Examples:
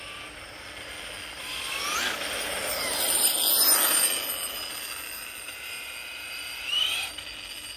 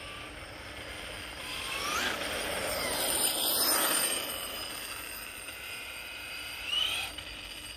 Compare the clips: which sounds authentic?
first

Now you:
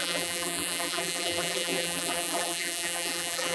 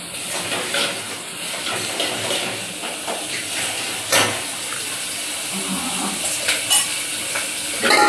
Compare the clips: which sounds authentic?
second